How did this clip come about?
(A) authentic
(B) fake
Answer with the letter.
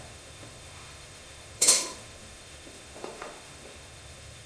B